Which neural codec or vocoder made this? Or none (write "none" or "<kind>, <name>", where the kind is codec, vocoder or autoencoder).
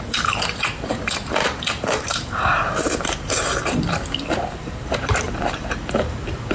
vocoder, BigVGAN v2